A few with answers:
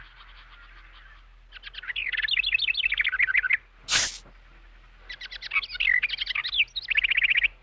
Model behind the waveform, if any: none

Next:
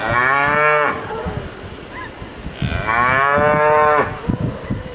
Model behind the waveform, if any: none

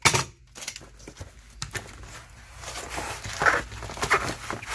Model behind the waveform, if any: none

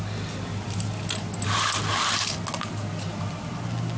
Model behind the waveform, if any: none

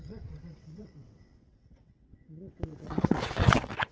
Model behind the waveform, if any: vocoder, WaveNeXt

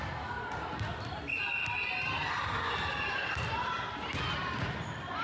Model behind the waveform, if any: none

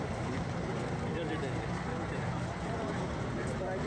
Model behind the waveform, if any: none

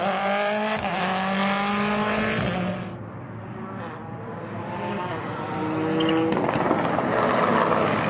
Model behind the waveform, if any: none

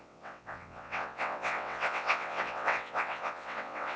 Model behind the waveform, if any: vocoder, WaveNeXt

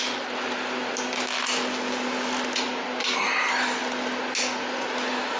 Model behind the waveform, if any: none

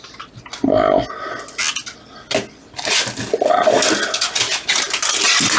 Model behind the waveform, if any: none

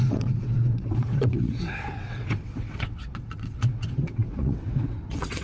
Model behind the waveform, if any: vocoder, WaveNeXt